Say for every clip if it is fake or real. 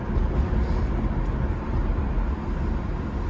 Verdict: real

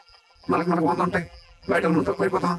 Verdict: fake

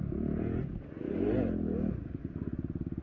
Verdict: real